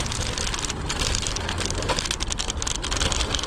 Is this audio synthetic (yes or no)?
no